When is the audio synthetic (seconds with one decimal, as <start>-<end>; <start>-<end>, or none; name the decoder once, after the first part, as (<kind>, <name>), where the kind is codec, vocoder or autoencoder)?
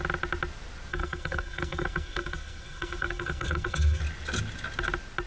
0.9-4.0 (codec, SNAC)